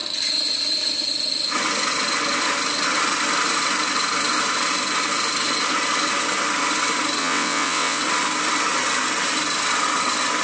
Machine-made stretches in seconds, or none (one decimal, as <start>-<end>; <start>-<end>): 7.2-8.0